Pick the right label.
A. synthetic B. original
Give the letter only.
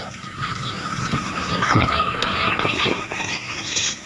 A